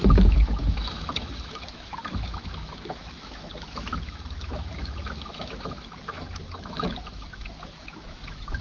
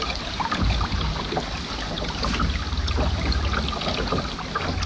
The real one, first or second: second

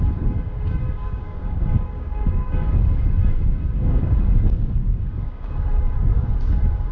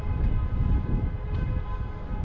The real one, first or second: second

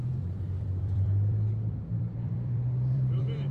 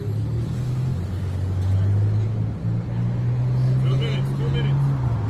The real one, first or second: second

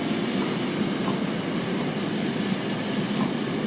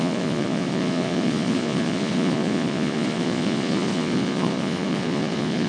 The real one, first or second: first